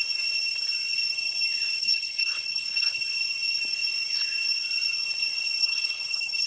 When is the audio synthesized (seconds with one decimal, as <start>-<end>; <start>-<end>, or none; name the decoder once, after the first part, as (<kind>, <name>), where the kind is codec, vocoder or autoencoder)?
1.8-3.0 (codec, HILCodec); 5.6-6.5